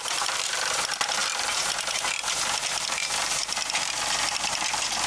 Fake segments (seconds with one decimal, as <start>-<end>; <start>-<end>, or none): none

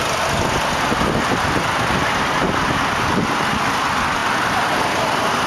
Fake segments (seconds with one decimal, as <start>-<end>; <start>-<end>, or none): none

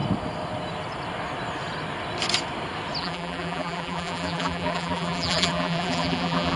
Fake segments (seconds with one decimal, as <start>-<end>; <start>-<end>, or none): 3.0-6.6

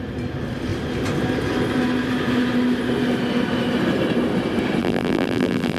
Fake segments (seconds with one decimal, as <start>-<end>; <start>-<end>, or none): 4.8-5.8

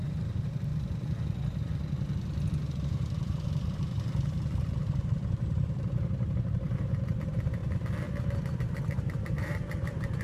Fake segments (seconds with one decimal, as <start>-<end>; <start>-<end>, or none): 0.0-0.7; 2.7-7.6; 8.8-10.2